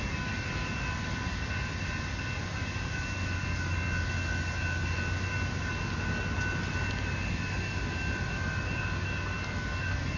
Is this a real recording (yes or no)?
yes